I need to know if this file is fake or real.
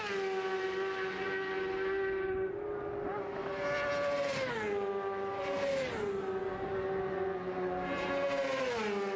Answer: real